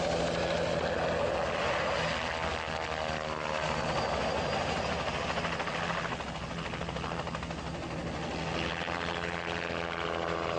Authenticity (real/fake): real